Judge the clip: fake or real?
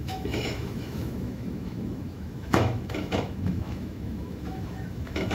fake